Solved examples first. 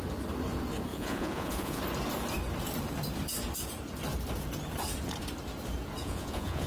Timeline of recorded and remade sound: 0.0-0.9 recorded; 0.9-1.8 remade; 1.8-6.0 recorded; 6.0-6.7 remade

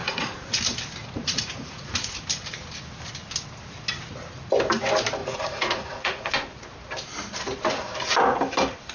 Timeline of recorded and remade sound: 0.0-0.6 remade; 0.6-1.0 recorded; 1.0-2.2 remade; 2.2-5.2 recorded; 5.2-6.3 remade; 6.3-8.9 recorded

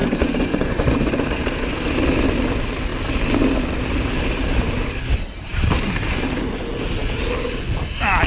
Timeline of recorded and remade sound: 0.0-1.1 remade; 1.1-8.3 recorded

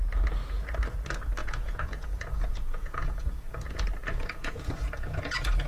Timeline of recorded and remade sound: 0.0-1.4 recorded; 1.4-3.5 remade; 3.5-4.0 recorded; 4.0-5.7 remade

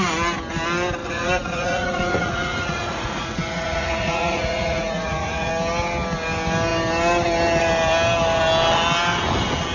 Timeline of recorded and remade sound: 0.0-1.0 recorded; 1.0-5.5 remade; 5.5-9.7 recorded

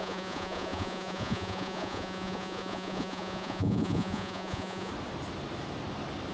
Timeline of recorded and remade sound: 0.0-4.9 remade; 4.9-6.3 recorded

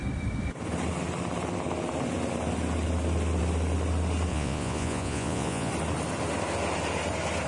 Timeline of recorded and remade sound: 0.0-4.3 recorded; 4.3-5.7 remade; 5.7-7.5 recorded

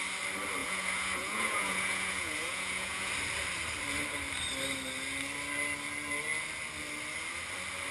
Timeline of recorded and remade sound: 0.0-0.6 recorded; 0.6-3.1 remade; 3.1-7.9 recorded